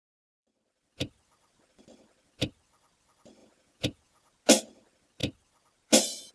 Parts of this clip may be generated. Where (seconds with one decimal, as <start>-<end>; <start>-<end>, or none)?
3.4-4.3